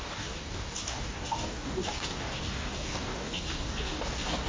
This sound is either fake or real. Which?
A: fake